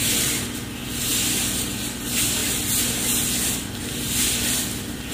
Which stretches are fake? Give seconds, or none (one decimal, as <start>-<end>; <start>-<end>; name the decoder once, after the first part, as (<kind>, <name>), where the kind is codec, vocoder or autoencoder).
none